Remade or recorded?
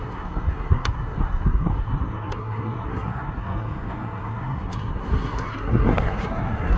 remade